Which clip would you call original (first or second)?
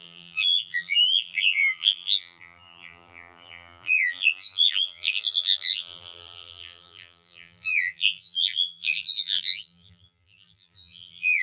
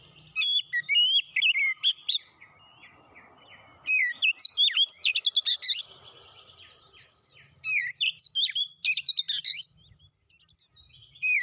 second